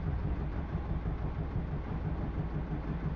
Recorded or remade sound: recorded